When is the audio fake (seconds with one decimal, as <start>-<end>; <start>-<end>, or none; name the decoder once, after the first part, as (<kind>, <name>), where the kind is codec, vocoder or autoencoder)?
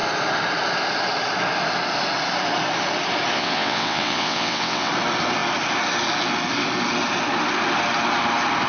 3.3-4.9 (vocoder, WaveNeXt)